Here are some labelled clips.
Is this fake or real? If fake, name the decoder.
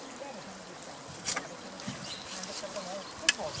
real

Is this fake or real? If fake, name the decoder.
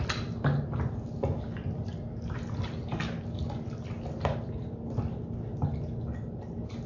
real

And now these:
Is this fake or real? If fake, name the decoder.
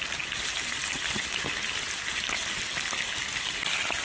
real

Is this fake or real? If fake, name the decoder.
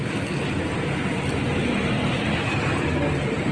real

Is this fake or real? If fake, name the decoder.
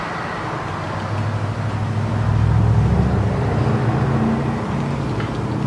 real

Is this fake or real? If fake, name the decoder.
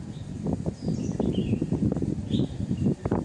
real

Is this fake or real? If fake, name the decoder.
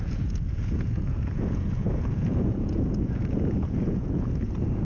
fake, vocoder, Vocos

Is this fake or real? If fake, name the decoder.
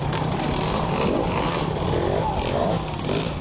real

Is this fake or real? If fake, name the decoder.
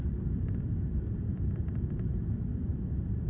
real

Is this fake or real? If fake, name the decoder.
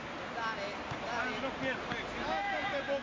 real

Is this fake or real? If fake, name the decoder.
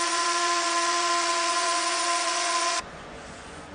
fake, vocoder, Vocos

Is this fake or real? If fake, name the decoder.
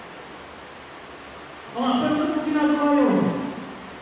real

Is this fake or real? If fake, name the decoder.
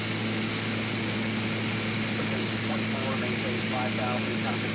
real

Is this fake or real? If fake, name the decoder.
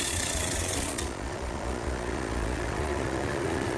fake, vocoder, Vocos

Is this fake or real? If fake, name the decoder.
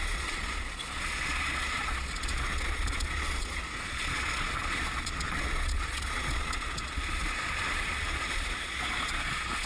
fake, vocoder, Vocos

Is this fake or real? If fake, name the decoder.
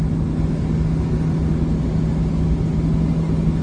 real